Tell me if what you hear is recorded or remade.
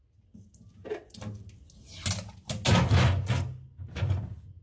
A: recorded